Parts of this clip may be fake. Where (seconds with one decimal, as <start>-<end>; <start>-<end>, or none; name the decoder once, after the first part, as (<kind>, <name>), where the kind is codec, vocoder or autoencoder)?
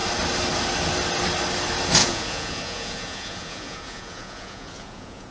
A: 2.0-5.3 (vocoder, Vocos)